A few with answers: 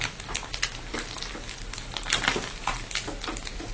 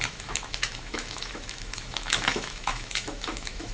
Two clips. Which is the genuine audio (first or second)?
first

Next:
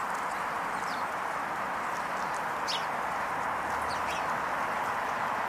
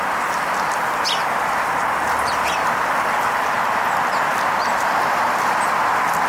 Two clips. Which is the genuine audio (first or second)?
first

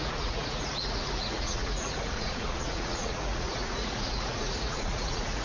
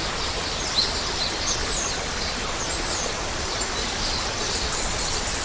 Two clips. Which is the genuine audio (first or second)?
second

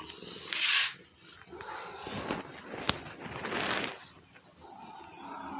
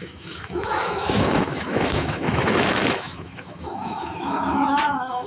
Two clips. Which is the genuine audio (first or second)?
first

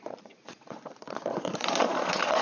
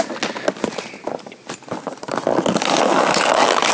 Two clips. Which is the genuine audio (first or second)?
second